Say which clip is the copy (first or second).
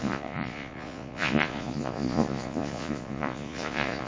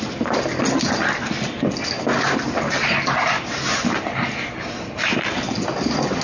first